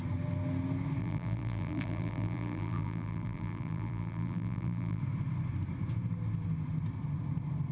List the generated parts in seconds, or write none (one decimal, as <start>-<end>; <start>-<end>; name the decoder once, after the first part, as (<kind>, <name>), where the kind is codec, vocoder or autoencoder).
1.0-5.0 (vocoder, BigVGAN v2)